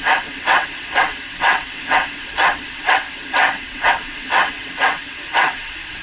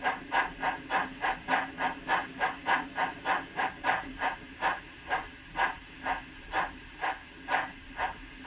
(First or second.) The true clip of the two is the second